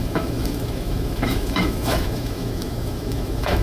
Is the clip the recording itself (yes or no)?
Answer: no